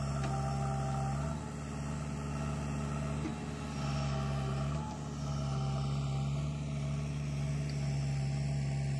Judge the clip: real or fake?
real